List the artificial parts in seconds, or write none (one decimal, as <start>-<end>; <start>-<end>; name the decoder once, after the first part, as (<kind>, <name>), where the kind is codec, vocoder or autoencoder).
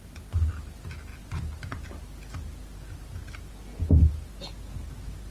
none